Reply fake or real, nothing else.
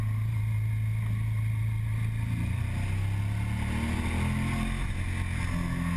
real